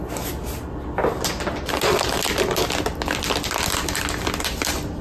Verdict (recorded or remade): recorded